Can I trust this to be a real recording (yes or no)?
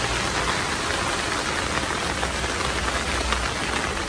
yes